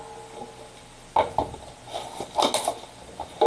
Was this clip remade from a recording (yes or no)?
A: no